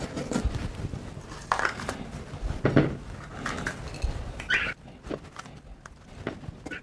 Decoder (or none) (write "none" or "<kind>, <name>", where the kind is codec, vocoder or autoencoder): none